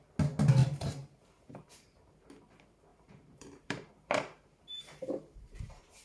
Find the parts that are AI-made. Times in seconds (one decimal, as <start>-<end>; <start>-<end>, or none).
0.6-2.1; 2.9-5.6